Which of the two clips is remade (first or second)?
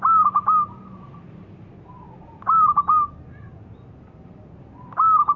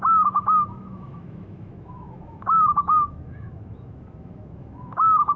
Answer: second